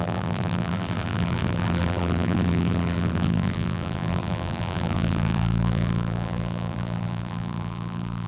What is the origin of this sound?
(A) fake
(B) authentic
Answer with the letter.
A